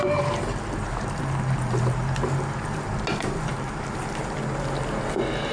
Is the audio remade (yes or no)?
no